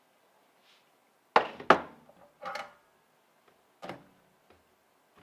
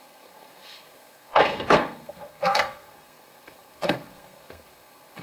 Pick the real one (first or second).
first